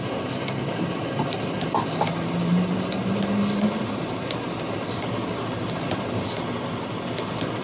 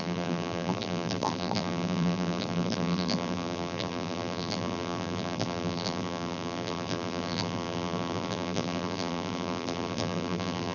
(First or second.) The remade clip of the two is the second